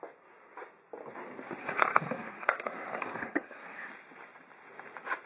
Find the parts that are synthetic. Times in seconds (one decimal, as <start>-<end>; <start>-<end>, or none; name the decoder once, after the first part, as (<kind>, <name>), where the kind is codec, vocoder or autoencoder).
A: 1.6-3.9 (codec, SNAC)